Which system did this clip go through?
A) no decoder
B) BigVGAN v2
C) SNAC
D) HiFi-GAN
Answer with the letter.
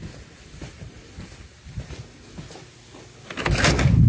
A